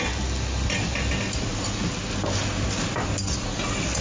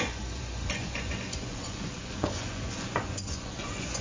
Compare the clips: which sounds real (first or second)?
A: first